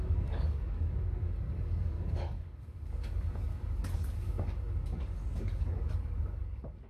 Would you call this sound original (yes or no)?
no